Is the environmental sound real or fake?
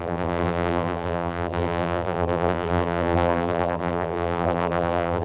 fake